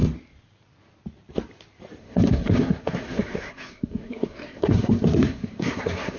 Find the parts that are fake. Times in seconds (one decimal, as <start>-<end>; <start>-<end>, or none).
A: 2.0-6.2